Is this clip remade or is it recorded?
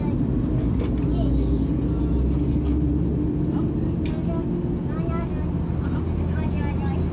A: recorded